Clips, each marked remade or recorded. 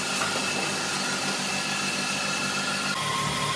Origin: recorded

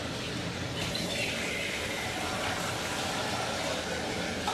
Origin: recorded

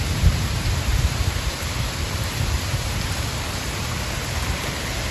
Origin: remade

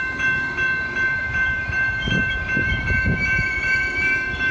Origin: remade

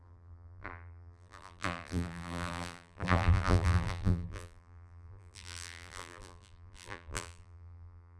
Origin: remade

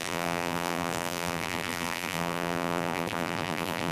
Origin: remade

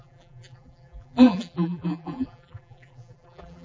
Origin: remade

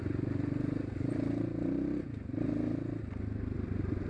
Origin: recorded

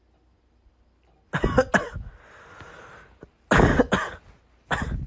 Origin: recorded